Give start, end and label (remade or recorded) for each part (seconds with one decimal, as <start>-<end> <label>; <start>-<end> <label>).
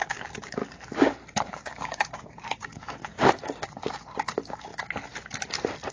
0.0-0.6 remade; 0.6-1.4 recorded; 1.4-4.7 remade; 4.7-5.9 recorded